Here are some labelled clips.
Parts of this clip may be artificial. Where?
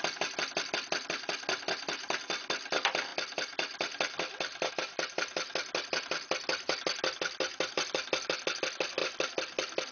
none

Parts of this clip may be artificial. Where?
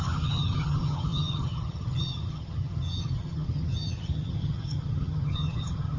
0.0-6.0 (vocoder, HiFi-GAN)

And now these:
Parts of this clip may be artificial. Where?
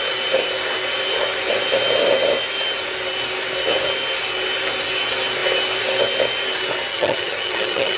6.9-8.0 (vocoder, HiFi-GAN)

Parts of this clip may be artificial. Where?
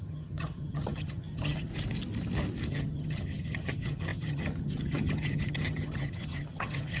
0.0-1.7 (vocoder, HiFi-GAN); 2.7-7.0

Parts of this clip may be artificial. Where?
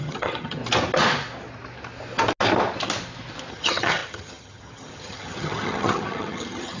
0.0-0.6 (vocoder, HiFi-GAN); 3.5-6.8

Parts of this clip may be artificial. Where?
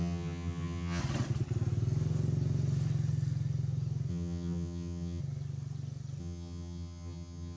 0.0-1.0 (vocoder, HiFi-GAN); 4.1-5.2; 6.2-7.6